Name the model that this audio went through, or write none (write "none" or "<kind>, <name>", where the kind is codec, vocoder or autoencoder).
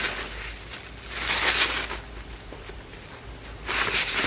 none